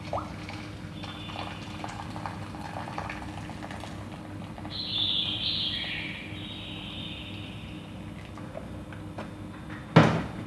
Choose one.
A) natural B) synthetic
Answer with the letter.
A